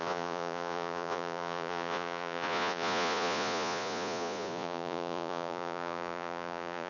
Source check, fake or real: fake